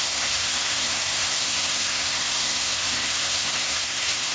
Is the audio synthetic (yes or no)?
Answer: yes